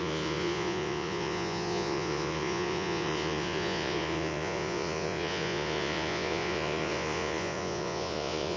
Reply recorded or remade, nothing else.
remade